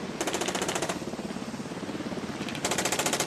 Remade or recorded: recorded